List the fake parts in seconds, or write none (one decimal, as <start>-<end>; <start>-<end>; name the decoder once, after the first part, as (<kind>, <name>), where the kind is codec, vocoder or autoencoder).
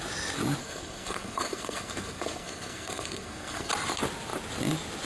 0.6-3.7 (codec, SNAC)